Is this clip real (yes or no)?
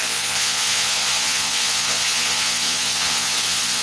no